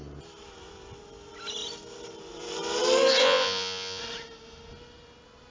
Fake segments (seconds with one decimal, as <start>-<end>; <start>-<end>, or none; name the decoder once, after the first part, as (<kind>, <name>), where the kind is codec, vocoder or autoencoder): 3.2-4.0 (vocoder, Vocos)